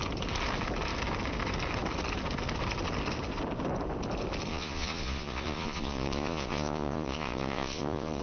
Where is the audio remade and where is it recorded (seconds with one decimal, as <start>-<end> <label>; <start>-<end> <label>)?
0.0-4.5 recorded; 4.5-8.2 remade